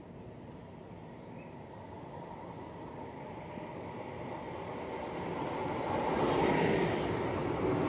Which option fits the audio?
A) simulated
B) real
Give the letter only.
B